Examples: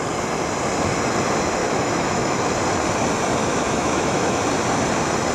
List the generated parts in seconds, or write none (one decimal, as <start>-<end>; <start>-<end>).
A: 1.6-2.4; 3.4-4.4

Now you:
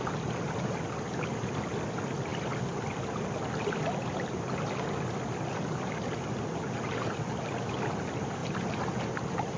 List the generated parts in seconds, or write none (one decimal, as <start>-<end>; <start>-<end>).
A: none

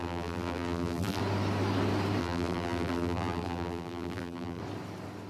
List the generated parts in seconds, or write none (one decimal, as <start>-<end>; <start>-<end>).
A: 0.0-1.2; 2.2-4.6

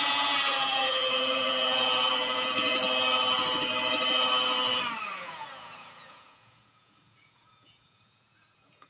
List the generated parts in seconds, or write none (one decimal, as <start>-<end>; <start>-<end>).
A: 0.0-2.7; 5.1-8.9